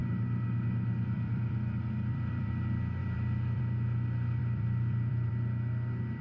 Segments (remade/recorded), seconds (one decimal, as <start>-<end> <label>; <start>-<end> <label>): 0.0-2.5 remade; 2.5-3.0 recorded; 3.0-3.6 remade; 3.6-4.4 recorded; 4.4-5.3 remade; 5.3-6.2 recorded